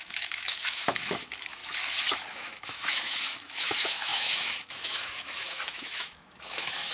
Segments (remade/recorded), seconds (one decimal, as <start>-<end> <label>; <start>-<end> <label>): 0.0-1.6 remade; 1.6-2.3 recorded; 2.3-6.9 remade